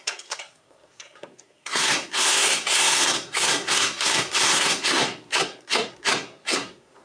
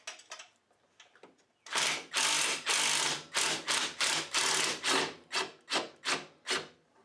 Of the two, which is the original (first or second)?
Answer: second